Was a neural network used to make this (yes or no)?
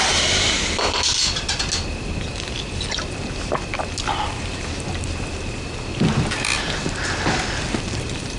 no